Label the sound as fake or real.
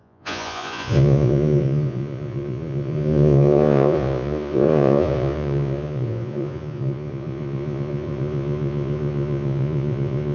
fake